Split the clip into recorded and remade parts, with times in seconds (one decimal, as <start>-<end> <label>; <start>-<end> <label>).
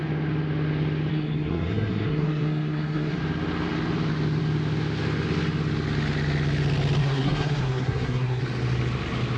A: 0.0-1.1 recorded; 1.1-3.2 remade; 3.2-7.0 recorded; 7.0-8.4 remade; 8.4-9.4 recorded